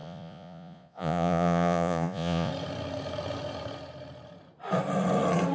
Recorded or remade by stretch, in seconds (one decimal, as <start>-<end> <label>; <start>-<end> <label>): 0.0-2.5 remade; 2.5-5.5 recorded